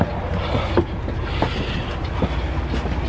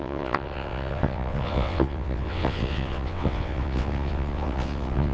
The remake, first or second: second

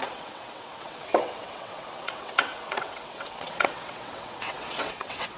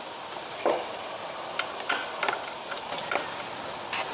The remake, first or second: first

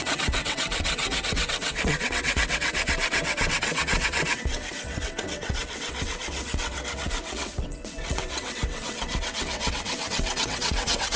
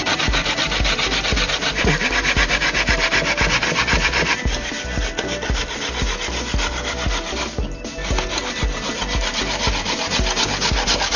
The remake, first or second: first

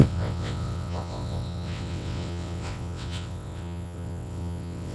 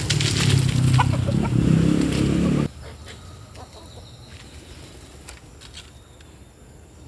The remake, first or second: first